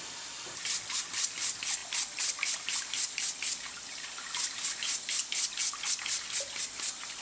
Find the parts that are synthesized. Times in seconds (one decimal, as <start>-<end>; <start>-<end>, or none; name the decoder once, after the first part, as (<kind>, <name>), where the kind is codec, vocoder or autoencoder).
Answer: none